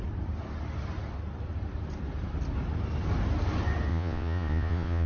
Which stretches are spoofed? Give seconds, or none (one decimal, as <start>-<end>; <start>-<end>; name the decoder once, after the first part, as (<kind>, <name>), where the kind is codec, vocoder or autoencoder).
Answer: 3.9-5.1 (vocoder, Vocos)